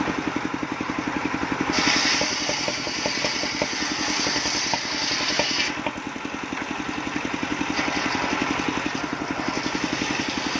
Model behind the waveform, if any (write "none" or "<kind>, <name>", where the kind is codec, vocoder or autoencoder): none